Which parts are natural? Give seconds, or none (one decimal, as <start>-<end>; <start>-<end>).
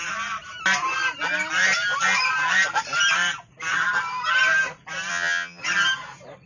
0.0-5.1; 5.6-6.5